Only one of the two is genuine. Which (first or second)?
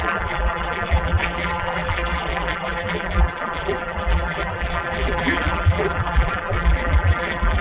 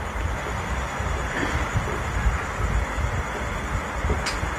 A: second